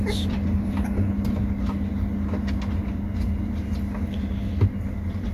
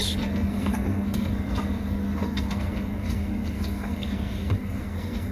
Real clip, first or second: first